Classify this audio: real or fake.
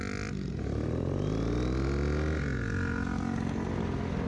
real